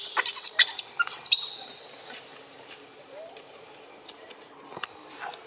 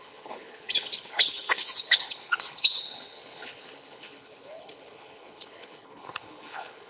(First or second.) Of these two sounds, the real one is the first